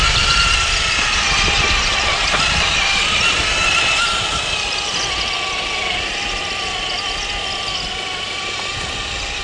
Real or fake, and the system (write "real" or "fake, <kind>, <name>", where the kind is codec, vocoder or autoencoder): real